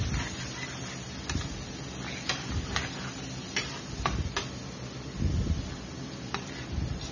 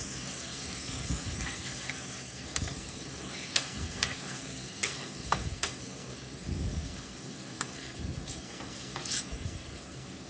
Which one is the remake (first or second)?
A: second